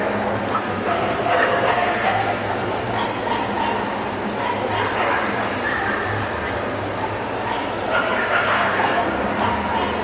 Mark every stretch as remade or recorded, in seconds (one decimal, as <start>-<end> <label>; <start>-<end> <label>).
0.0-0.4 recorded; 0.4-2.5 remade; 2.5-8.2 recorded; 8.2-9.0 remade; 9.0-10.0 recorded